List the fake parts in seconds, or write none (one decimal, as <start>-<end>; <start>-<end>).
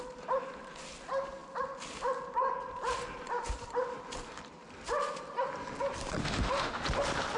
6.2-6.8